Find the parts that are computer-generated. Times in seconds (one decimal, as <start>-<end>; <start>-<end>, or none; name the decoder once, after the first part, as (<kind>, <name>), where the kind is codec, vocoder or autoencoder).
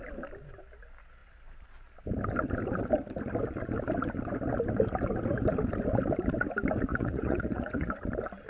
6.9-7.9 (vocoder, Vocos)